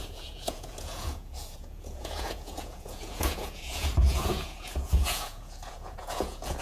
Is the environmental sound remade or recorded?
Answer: remade